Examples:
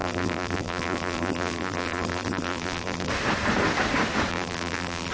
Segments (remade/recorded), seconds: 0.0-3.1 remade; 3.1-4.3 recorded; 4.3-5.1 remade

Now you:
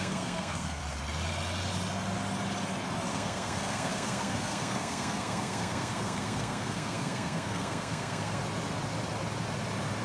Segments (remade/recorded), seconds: 0.0-0.8 remade; 0.8-3.1 recorded; 3.1-8.4 remade; 8.4-10.0 recorded

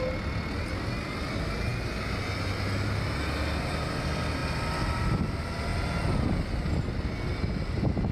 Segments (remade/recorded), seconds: 0.0-8.1 recorded

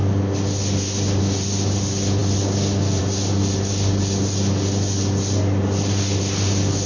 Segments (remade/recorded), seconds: 0.0-6.9 recorded

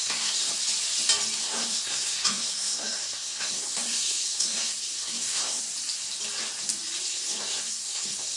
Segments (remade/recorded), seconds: 0.0-0.5 remade; 0.5-1.4 recorded; 1.4-5.6 remade; 5.6-7.1 recorded; 7.1-8.4 remade